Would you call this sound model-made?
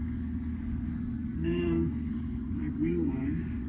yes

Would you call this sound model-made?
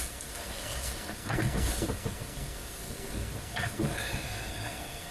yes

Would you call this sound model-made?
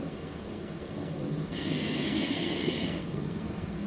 yes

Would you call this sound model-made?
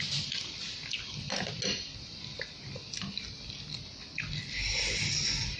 no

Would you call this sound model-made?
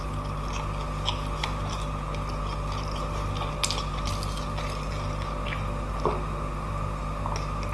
no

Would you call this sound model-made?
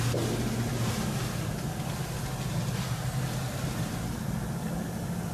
no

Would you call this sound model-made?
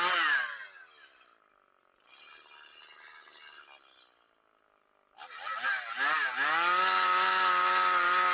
no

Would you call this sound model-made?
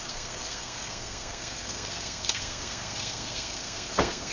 yes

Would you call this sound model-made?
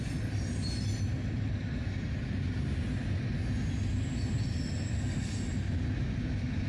no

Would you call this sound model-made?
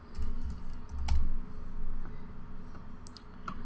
no